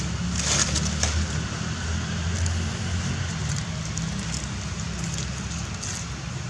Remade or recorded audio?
recorded